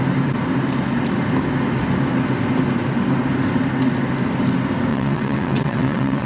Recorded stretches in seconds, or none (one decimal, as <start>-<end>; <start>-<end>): 0.0-4.9